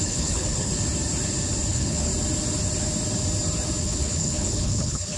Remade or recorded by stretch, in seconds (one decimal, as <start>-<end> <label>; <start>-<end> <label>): 0.0-0.7 remade; 0.7-1.7 recorded; 1.7-2.1 remade; 2.1-3.8 recorded; 3.8-5.2 remade